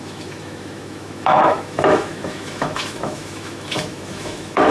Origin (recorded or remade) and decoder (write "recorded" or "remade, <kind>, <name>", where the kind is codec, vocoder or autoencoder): remade, autoencoder, DAC-VAE